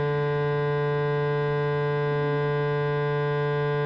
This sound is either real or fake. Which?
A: real